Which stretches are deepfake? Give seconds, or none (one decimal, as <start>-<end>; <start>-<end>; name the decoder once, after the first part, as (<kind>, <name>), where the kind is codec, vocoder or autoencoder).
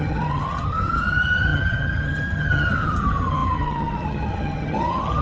0.0-5.2 (vocoder, HiFi-GAN)